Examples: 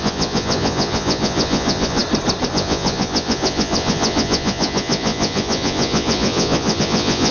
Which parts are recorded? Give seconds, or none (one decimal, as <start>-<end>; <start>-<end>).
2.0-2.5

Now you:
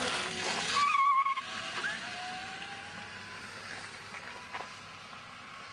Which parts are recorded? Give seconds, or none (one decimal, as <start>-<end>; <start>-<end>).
0.0-5.7

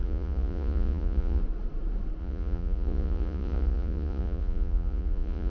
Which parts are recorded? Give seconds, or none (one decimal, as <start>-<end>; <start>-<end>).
1.4-2.2

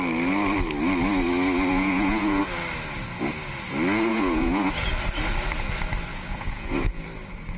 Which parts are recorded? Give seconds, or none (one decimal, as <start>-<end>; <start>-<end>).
0.0-1.7; 2.4-4.1; 4.7-6.1; 7.0-7.6

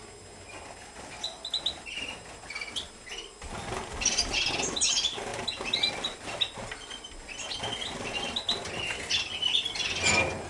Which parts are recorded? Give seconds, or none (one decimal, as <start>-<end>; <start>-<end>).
0.0-10.5